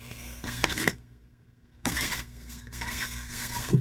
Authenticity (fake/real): fake